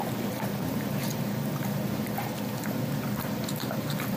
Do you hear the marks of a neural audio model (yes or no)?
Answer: no